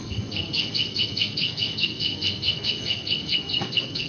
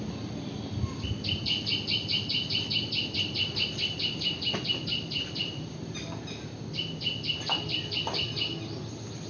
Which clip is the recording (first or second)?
second